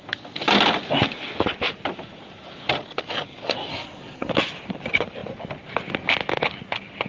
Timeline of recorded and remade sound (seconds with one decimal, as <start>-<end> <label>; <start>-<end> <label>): 0.0-3.7 recorded; 3.7-4.3 remade; 4.3-7.1 recorded